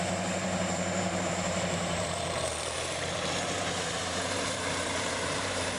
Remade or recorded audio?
remade